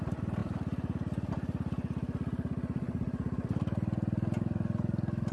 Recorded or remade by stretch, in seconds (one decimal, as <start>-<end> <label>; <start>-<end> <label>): 0.0-5.3 recorded